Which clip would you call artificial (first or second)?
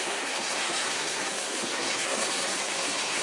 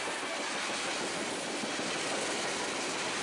first